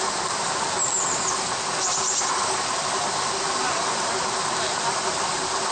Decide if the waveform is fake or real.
real